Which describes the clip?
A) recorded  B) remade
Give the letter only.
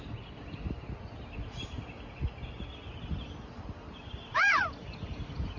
A